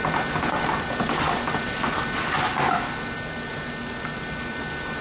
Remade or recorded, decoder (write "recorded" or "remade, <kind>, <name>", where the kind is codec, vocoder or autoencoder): recorded